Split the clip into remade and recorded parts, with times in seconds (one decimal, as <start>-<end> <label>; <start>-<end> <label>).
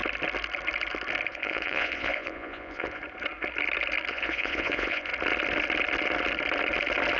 0.0-1.3 recorded; 1.3-3.0 remade; 3.0-4.1 recorded; 4.1-5.1 remade; 5.1-7.2 recorded